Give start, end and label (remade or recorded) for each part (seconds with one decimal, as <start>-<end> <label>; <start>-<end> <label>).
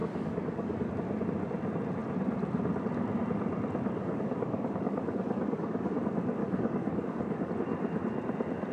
0.0-0.9 remade; 0.9-4.0 recorded; 4.0-6.0 remade; 6.0-6.4 recorded; 6.4-7.5 remade; 7.5-8.7 recorded